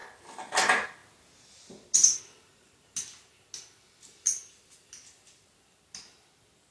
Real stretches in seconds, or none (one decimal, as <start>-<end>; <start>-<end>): 0.0-6.7